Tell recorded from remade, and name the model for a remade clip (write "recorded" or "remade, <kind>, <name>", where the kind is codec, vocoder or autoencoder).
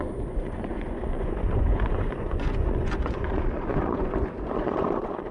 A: remade, vocoder, Vocos